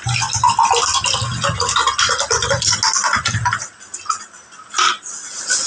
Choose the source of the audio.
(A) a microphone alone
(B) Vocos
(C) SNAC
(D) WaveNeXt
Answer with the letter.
A